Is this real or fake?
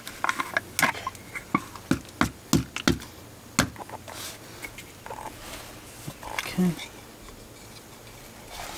real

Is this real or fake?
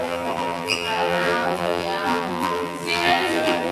fake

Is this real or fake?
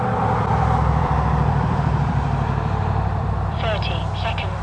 fake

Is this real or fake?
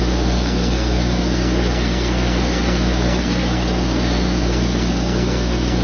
fake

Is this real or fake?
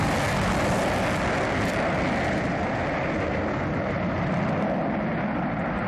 real